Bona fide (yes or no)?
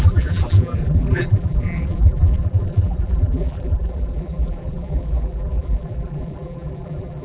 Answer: no